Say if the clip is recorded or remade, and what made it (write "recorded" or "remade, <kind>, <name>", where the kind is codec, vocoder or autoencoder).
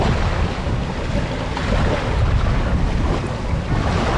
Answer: recorded